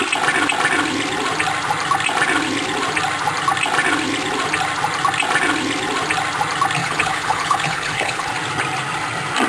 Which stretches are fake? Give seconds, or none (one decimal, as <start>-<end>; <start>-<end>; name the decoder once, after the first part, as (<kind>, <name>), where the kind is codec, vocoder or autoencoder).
6.8-8.3 (codec, HILCodec)

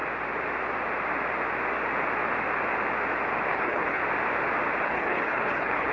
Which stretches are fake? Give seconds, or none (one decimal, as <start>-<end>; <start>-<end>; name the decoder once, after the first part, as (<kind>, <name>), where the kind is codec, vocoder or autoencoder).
3.5-4.0 (codec, HILCodec); 4.8-5.9

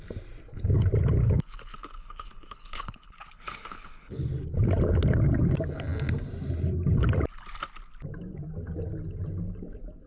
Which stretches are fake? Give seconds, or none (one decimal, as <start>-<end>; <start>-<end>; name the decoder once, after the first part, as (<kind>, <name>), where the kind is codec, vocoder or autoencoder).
1.2-4.3 (codec, HILCodec)

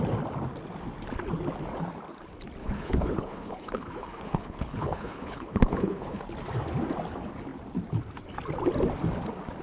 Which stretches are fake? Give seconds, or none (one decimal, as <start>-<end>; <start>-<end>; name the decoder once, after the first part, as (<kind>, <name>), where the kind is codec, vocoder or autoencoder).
2.6-6.2 (codec, HILCodec)